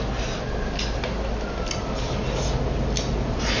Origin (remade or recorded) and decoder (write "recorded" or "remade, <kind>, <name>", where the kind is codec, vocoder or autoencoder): recorded